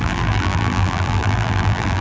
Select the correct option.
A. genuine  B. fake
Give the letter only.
B